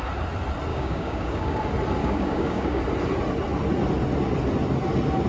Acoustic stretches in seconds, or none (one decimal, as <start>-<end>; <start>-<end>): 0.0-0.7; 1.6-2.0; 2.8-5.3